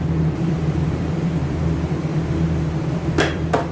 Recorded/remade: remade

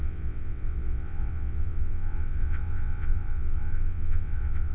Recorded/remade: remade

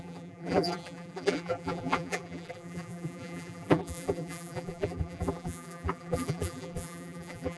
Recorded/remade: remade